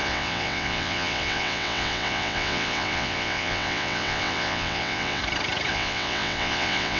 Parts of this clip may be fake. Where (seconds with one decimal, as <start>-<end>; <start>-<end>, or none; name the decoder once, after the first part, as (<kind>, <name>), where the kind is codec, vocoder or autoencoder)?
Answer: 0.0-5.2 (vocoder, WaveNeXt); 5.7-7.0